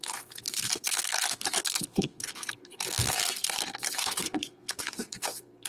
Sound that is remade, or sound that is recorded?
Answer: remade